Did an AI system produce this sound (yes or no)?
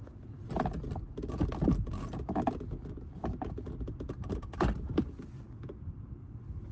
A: no